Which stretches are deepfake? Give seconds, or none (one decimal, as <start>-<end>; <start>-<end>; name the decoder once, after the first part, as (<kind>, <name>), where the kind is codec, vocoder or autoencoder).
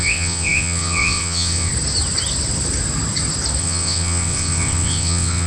0.0-1.7 (vocoder, WaveNeXt); 3.6-5.5